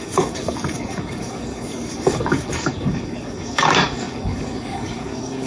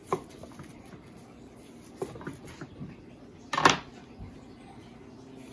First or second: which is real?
second